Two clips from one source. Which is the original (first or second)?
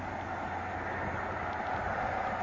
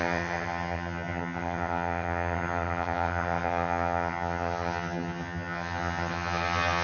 first